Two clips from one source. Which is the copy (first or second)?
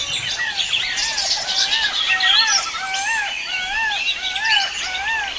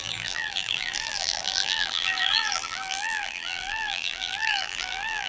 second